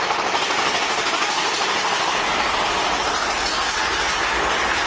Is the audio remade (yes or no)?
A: no